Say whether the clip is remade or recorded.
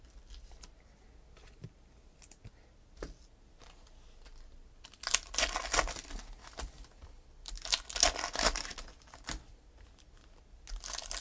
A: recorded